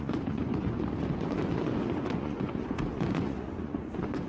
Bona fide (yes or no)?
no